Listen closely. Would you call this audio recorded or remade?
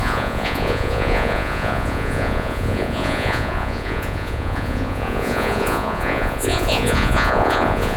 remade